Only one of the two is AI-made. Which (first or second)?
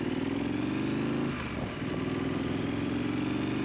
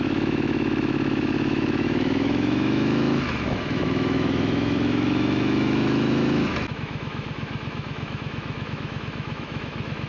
second